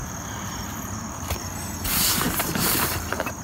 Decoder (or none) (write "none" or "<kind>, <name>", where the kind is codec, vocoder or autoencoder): vocoder, BigVGAN v2